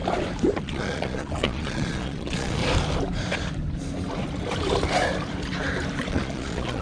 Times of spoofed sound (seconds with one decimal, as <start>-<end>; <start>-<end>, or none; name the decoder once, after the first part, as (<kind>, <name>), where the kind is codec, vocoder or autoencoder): 0.6-2.6 (vocoder, Vocos); 6.1-6.8